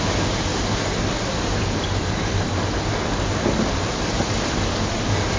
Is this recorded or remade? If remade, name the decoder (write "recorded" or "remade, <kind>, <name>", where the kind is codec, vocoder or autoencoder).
recorded